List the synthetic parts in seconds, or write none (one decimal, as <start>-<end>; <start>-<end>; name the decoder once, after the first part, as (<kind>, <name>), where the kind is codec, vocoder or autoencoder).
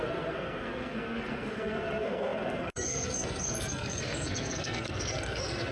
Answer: 0.0-5.7 (codec, SNAC)